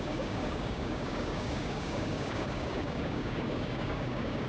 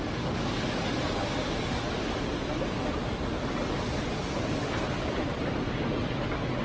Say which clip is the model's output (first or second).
first